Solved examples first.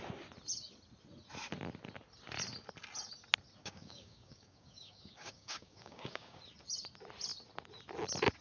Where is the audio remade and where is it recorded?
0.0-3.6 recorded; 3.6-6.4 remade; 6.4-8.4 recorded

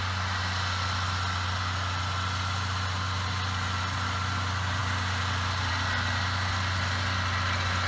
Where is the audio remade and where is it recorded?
0.0-7.9 recorded

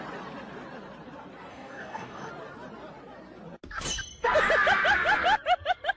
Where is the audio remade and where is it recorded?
0.0-1.5 recorded; 1.5-2.3 remade; 2.3-6.0 recorded

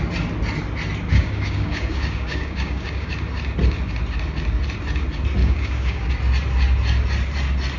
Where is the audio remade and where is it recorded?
0.0-1.1 recorded; 1.1-3.1 remade; 3.1-5.4 recorded; 5.4-6.1 remade; 6.1-7.8 recorded

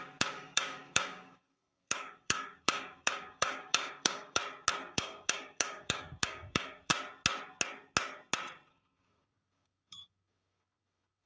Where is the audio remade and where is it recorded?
0.0-4.4 remade; 4.4-4.9 recorded; 4.9-6.9 remade; 6.9-8.7 recorded; 8.7-11.3 remade